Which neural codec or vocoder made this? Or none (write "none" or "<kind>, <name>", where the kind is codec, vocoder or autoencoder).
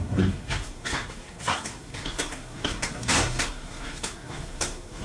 codec, SNAC